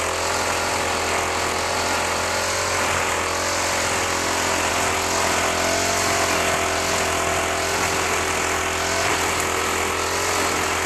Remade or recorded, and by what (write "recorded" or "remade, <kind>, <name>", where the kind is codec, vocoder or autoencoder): recorded